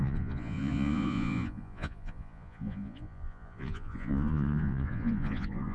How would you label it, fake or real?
fake